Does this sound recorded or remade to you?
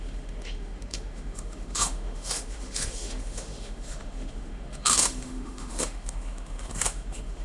remade